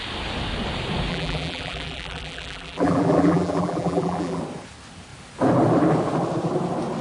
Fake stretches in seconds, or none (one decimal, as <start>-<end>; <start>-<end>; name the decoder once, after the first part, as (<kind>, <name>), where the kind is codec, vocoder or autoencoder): 1.1-4.4 (vocoder, BigVGAN v2)